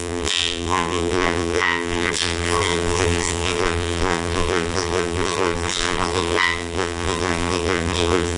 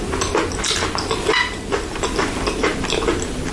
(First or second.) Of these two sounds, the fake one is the first